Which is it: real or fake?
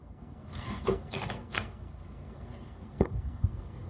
fake